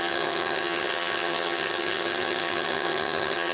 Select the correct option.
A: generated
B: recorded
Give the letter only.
A